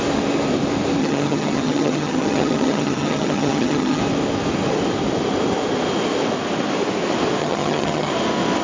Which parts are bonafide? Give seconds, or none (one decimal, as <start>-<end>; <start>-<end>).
0.0-1.0; 4.0-7.4; 8.1-8.6